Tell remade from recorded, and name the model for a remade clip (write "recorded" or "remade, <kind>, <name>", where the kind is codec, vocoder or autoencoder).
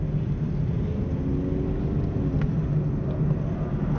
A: recorded